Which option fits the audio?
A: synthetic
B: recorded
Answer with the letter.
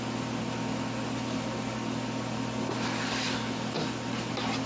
B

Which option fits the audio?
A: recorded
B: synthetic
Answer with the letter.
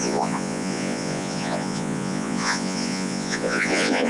B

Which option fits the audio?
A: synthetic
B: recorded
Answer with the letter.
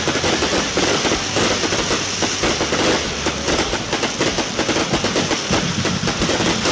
B